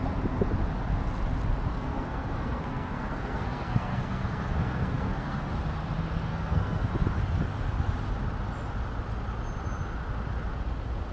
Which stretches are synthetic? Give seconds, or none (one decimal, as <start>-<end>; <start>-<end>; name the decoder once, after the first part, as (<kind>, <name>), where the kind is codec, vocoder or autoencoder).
1.7-5.5 (codec, SNAC); 6.3-6.9